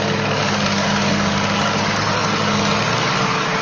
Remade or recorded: remade